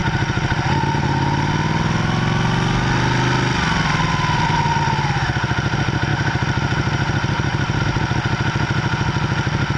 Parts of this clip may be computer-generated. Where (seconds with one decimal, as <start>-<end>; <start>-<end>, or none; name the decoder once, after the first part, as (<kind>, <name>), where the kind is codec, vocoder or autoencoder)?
6.1-7.8 (vocoder, BigVGAN v2)